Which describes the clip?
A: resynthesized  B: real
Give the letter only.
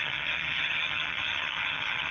A